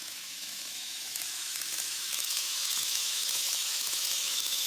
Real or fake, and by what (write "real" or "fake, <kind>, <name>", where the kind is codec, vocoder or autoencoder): fake, autoencoder, DAC-VAE